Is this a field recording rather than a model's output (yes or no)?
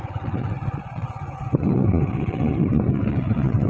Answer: no